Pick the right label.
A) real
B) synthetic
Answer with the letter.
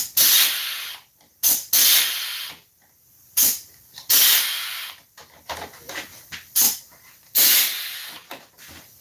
A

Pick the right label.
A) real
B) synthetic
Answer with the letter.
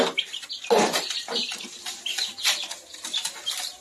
A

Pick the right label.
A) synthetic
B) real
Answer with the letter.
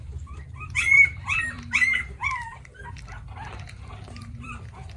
A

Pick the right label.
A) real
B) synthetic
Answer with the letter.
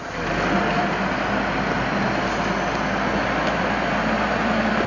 A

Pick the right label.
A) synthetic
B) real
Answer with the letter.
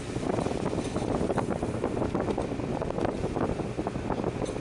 B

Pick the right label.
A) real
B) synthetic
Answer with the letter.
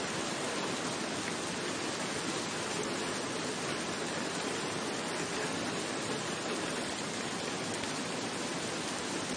A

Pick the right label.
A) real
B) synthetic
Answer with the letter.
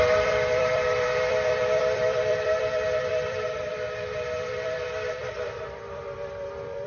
B